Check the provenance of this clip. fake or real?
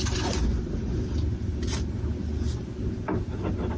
real